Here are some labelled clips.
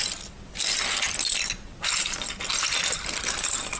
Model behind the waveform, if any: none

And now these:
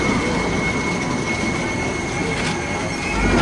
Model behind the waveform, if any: none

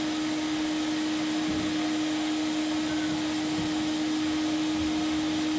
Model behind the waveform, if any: none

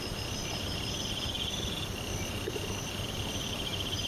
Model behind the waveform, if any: vocoder, BigVGAN v2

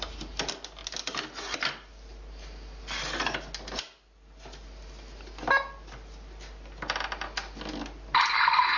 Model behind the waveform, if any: none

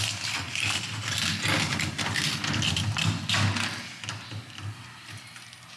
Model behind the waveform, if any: none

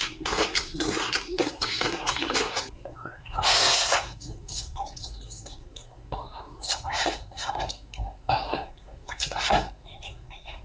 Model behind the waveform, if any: codec, SNAC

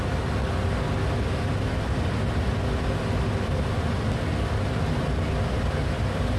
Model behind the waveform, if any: none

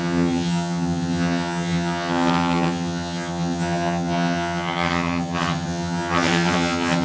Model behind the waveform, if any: vocoder, HiFi-GAN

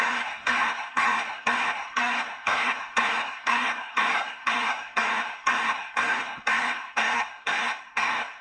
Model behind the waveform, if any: codec, SNAC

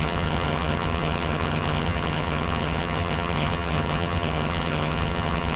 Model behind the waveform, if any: vocoder, HiFi-GAN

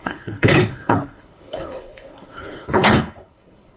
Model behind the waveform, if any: codec, HILCodec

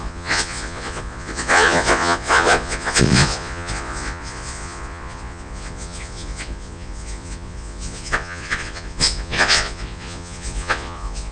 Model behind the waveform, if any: vocoder, Vocos